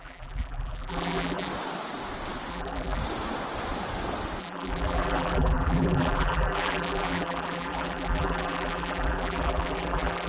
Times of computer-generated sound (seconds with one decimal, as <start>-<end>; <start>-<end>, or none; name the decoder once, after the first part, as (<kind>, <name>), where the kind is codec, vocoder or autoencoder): 0.0-1.5 (vocoder, BigVGAN v2); 2.5-3.0; 4.4-10.3